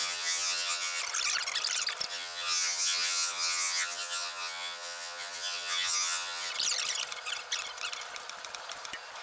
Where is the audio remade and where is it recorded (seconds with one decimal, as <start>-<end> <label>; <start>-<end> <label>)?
0.0-1.0 remade; 1.0-2.1 recorded; 2.1-6.5 remade; 6.5-9.2 recorded